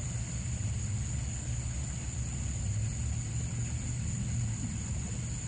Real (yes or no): yes